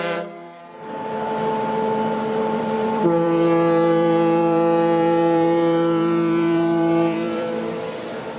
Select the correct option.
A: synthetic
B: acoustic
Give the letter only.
A